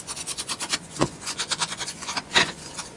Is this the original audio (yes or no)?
no